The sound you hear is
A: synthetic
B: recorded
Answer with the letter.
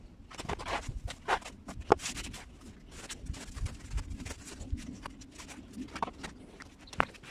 B